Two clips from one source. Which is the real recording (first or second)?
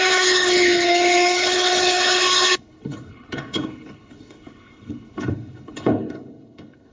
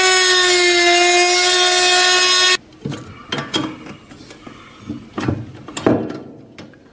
second